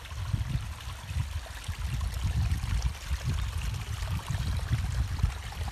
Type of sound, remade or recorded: recorded